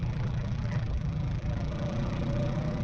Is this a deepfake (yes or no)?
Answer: yes